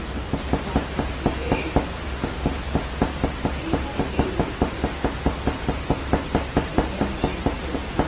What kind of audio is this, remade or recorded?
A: recorded